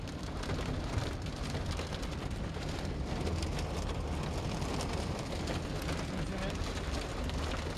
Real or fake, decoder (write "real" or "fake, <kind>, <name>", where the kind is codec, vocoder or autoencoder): real